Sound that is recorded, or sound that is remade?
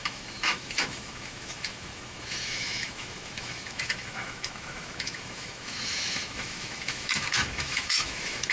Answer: remade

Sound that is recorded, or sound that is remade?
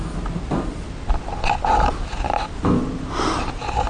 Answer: recorded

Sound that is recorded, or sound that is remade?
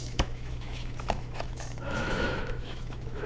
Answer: remade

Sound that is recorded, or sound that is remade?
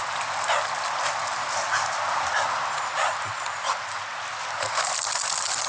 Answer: recorded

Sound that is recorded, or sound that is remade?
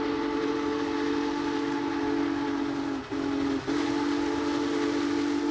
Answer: recorded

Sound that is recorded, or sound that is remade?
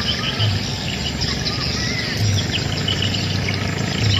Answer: recorded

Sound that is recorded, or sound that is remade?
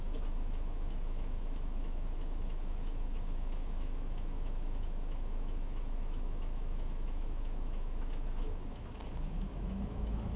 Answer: remade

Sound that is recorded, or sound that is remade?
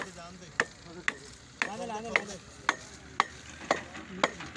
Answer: recorded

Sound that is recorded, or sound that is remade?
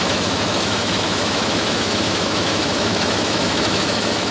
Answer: remade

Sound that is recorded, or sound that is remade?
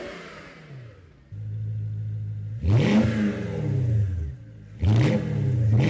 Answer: recorded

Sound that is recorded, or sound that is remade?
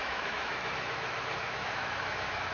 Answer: remade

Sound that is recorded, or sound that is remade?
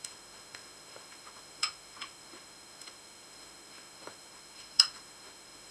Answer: remade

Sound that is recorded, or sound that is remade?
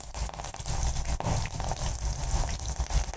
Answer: recorded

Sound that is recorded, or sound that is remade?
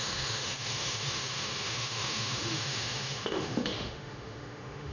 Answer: remade